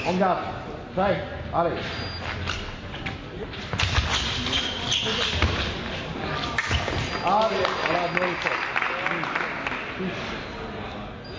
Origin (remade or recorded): recorded